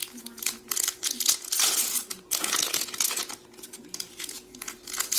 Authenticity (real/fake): fake